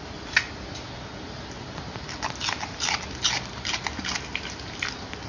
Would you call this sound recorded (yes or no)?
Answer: yes